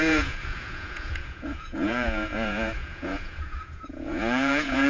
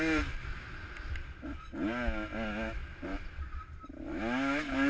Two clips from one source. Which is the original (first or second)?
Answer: second